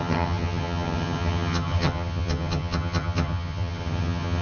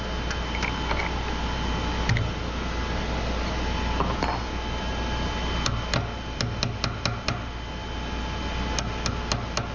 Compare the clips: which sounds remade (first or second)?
first